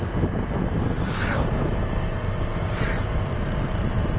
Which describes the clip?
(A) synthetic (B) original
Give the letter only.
A